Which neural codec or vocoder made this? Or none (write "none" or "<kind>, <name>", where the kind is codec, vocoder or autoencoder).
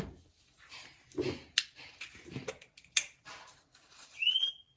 none